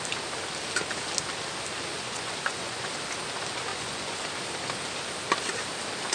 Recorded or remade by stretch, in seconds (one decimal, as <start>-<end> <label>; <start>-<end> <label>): 0.0-1.9 recorded; 1.9-2.9 remade; 2.9-3.7 recorded; 3.7-4.3 remade; 4.3-6.1 recorded